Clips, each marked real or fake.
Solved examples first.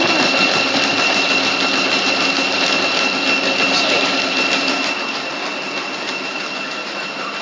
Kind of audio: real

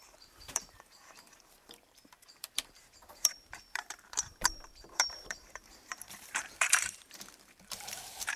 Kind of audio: fake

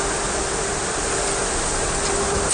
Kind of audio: real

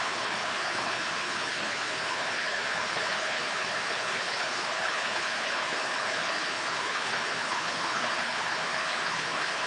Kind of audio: fake